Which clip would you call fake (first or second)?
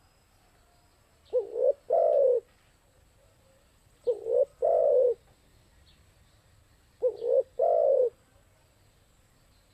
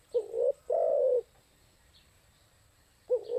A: second